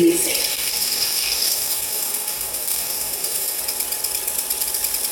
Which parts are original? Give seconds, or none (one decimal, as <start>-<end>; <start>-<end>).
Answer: 0.0-0.5; 3.6-5.1